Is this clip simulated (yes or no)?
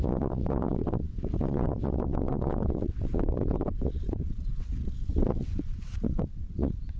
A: yes